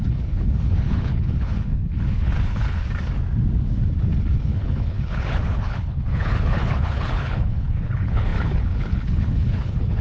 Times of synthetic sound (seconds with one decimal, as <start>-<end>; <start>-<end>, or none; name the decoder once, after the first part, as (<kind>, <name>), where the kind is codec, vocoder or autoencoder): 0.0-2.8 (codec, HILCodec); 4.4-10.0